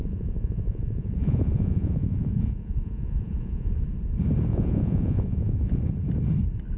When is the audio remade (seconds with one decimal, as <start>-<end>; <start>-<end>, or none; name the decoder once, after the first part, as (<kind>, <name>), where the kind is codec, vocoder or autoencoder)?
0.0-3.7 (vocoder, Vocos); 4.5-5.8